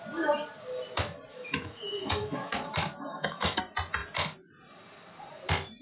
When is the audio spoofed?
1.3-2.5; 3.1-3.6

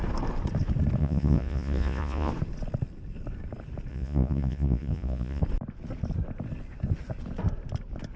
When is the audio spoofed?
1.0-2.3; 3.9-5.4